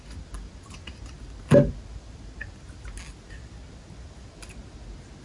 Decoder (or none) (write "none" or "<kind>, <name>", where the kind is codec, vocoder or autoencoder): none